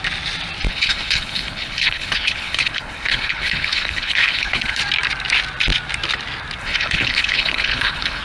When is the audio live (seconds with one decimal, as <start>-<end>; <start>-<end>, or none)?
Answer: 0.0-0.7; 4.8-6.6